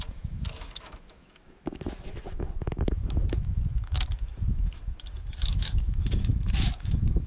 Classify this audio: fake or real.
fake